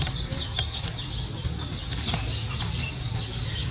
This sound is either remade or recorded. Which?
recorded